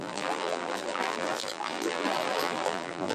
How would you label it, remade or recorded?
remade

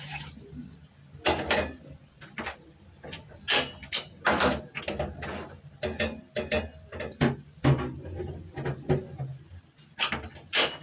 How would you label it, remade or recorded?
recorded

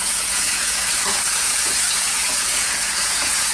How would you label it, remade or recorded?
remade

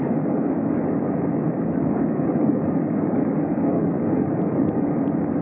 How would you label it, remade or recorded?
remade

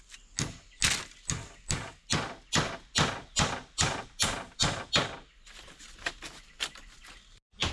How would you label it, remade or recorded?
recorded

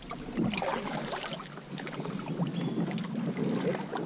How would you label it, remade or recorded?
recorded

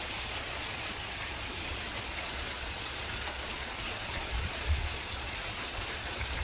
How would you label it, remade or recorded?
remade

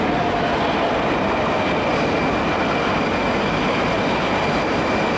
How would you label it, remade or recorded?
recorded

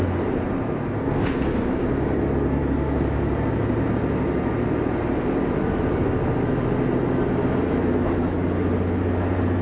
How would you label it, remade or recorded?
recorded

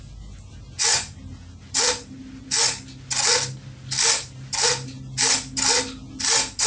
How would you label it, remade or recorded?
recorded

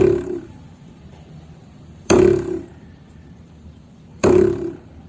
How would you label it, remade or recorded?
remade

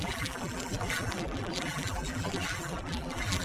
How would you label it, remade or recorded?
remade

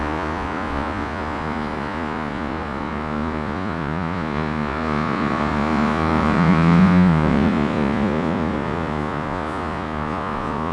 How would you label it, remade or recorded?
remade